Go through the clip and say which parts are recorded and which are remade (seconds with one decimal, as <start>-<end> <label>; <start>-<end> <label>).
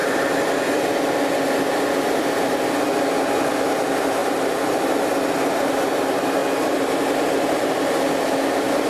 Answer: 0.0-4.2 recorded; 4.2-5.0 remade; 5.0-8.9 recorded